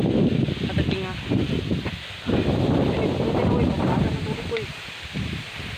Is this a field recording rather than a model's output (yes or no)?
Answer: yes